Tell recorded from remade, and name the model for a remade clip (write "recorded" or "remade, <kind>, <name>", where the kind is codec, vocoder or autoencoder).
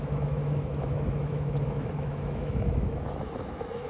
remade, autoencoder, DAC-VAE